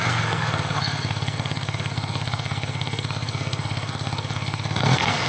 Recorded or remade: remade